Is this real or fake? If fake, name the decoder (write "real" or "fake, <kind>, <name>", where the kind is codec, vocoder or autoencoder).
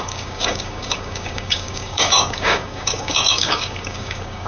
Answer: fake, codec, DAC